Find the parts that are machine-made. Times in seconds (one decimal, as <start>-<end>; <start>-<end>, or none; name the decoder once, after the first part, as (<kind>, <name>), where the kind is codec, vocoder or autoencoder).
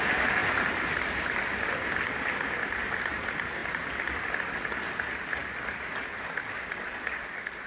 3.6-4.5 (vocoder, BigVGAN v2); 5.4-7.7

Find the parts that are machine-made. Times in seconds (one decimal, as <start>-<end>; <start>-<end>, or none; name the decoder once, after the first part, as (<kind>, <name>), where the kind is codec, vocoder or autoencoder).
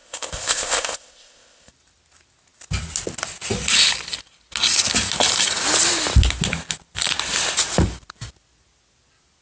0.0-1.7 (codec, ZipCodec)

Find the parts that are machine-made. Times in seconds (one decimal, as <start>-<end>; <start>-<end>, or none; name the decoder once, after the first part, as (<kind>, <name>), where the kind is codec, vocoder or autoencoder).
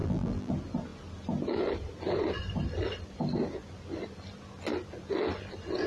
0.0-0.5 (vocoder, BigVGAN v2)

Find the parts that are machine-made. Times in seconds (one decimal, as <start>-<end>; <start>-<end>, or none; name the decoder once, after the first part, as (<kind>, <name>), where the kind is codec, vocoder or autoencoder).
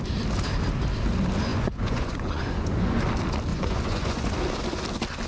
1.5-3.0 (vocoder, Vocos); 3.5-4.3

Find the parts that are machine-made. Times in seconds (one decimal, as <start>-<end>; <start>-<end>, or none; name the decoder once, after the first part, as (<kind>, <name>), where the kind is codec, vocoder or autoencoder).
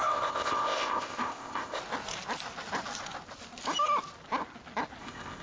0.0-1.8 (codec, ZipCodec); 5.0-5.4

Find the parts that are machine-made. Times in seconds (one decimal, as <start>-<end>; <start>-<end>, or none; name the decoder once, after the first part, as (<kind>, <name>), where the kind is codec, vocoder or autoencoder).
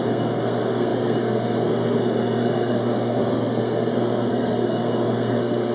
0.0-5.7 (codec, SNAC)